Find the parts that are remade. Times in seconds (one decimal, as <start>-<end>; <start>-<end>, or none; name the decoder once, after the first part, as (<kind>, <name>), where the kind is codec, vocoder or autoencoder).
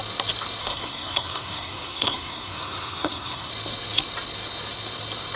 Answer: 0.6-3.5 (codec, SNAC)